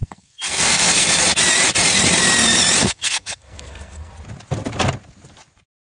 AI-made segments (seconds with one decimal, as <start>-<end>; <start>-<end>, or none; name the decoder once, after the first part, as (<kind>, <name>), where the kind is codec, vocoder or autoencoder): 0.0-1.2 (codec, SNAC); 2.8-4.1